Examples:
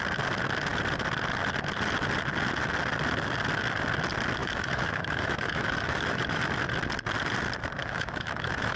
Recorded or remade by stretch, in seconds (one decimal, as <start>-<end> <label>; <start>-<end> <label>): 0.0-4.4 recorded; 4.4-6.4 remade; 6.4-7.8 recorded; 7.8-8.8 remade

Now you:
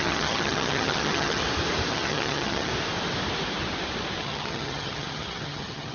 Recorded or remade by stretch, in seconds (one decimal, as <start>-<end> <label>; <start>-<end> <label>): 0.0-1.4 remade; 1.4-1.9 recorded; 1.9-2.7 remade; 2.7-4.2 recorded; 4.2-5.9 remade

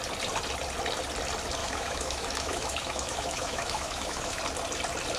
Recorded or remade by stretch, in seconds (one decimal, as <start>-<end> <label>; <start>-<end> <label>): 0.0-1.6 recorded; 1.6-4.4 remade; 4.4-5.2 recorded